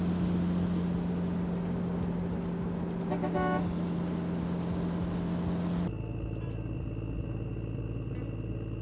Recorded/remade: recorded